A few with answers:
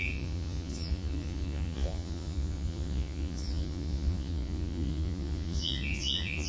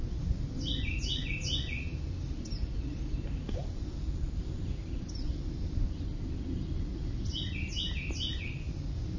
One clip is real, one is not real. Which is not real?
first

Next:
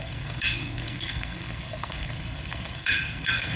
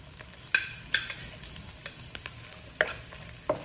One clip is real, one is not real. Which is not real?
first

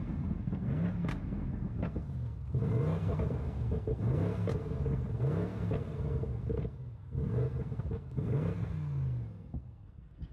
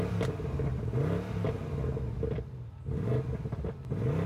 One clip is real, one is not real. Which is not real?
first